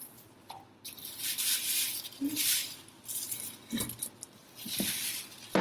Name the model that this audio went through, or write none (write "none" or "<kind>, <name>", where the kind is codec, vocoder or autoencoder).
none